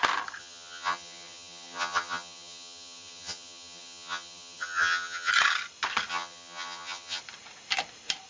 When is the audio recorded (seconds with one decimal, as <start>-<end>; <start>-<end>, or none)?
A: 0.0-0.4; 5.3-6.1; 7.2-8.3